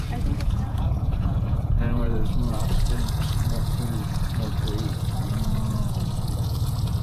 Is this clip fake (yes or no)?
yes